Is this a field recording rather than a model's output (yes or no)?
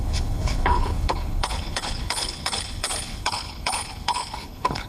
no